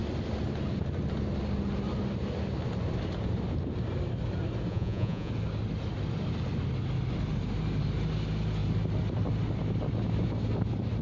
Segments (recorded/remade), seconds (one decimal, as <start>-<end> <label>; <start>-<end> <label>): 0.0-4.7 recorded; 4.7-5.3 remade; 5.3-11.0 recorded